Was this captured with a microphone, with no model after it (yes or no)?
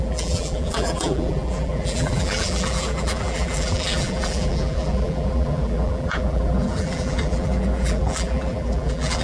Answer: no